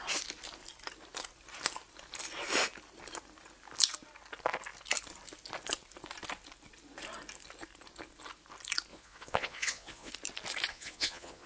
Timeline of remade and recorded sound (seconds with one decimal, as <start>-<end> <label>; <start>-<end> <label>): 0.0-8.9 recorded; 8.9-10.1 remade; 10.1-10.7 recorded; 10.7-11.5 remade